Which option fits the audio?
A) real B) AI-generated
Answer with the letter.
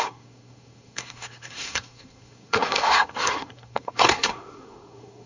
B